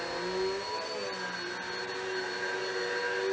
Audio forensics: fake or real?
real